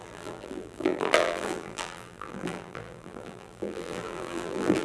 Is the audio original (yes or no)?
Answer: no